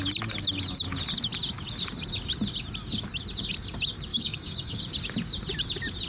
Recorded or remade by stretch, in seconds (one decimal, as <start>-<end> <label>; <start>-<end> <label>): 0.0-4.1 recorded; 4.1-4.8 remade; 4.8-6.1 recorded